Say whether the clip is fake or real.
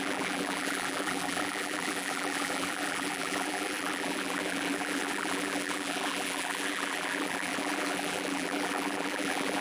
fake